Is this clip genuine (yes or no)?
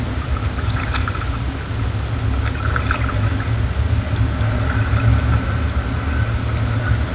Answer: yes